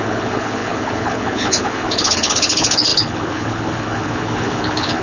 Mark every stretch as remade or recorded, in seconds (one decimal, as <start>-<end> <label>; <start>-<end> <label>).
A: 0.0-5.0 remade